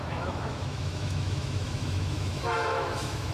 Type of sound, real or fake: fake